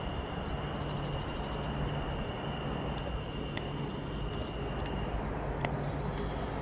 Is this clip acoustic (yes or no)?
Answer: yes